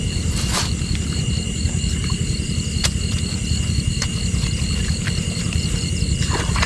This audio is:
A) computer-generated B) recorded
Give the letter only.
A